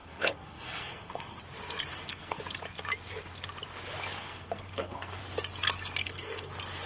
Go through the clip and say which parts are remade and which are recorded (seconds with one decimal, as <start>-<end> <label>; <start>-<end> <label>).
0.0-1.4 remade; 1.4-1.9 recorded; 1.9-2.4 remade; 2.4-4.2 recorded; 4.2-5.2 remade; 5.2-6.0 recorded; 6.0-6.5 remade; 6.5-6.9 recorded